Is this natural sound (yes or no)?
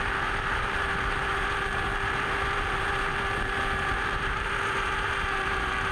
no